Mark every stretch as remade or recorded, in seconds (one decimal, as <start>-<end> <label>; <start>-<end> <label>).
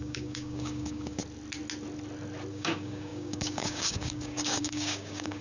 0.0-1.2 remade; 1.2-2.5 recorded; 2.5-5.4 remade